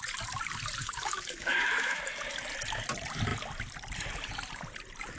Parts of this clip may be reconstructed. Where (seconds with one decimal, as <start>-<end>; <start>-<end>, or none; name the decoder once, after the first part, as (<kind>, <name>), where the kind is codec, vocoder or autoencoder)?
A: 0.8-2.0 (autoencoder, DAC-VAE)